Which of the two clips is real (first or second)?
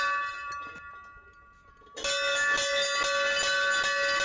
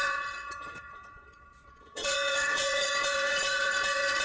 first